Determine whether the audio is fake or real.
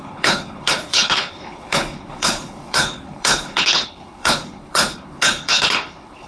fake